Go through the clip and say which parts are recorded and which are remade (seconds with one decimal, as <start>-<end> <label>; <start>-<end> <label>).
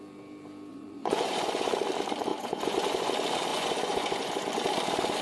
0.0-0.7 recorded; 0.7-1.7 remade; 1.7-2.3 recorded; 2.3-3.1 remade; 3.1-3.5 recorded; 3.5-4.3 remade; 4.3-5.2 recorded